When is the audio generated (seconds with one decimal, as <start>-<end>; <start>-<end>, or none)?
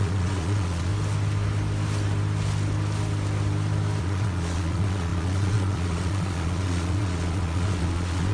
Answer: 0.0-0.9; 4.0-8.3